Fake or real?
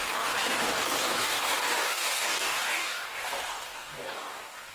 fake